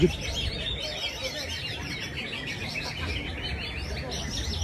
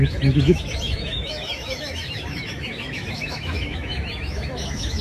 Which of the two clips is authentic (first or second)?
first